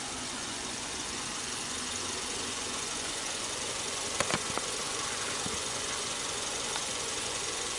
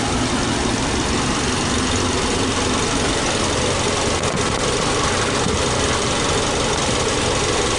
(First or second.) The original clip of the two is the second